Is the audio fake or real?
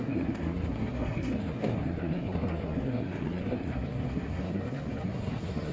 fake